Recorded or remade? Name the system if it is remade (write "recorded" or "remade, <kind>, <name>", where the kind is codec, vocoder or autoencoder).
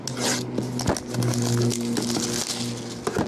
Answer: recorded